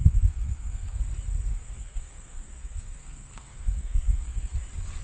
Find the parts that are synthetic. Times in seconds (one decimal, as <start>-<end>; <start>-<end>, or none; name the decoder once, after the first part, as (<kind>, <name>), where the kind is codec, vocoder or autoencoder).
0.0-1.0 (codec, SNAC); 1.5-4.5